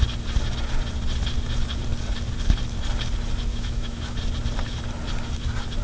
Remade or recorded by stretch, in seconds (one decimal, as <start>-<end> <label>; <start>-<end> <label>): 0.0-3.5 recorded; 3.5-4.2 remade; 4.2-5.8 recorded